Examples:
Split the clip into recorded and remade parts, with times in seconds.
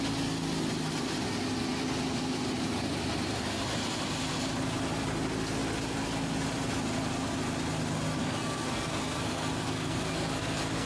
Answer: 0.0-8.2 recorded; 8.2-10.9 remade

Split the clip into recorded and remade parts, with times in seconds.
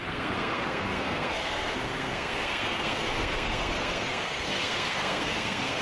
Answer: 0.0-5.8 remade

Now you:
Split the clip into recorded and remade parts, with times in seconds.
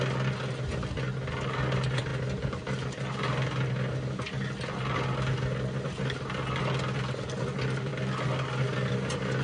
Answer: 0.0-9.4 recorded